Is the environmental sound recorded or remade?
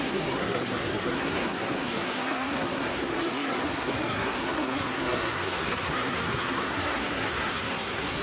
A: remade